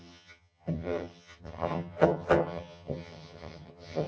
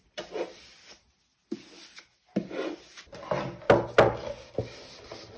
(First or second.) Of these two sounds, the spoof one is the first